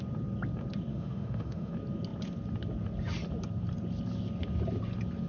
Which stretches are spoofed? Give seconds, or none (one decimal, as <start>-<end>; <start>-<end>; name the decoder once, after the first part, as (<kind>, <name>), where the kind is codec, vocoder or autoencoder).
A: 0.9-1.7 (autoencoder, DAC-VAE)